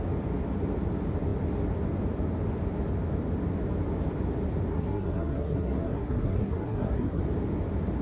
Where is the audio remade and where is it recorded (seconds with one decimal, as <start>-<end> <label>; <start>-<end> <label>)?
0.0-4.7 recorded; 4.7-7.2 remade; 7.2-8.0 recorded